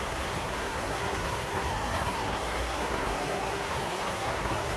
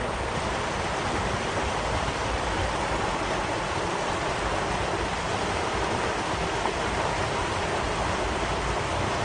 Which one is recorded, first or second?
second